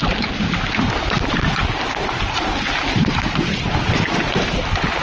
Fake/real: real